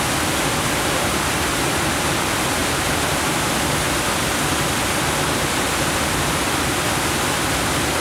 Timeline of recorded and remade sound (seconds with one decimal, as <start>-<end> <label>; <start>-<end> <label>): 0.0-8.0 recorded